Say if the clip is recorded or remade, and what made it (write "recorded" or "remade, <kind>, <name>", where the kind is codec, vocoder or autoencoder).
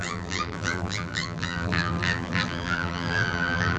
remade, vocoder, BigVGAN v2